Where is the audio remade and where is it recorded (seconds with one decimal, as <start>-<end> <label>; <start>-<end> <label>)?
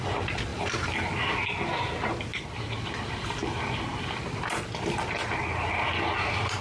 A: 0.0-2.3 recorded; 2.3-2.9 remade; 2.9-6.6 recorded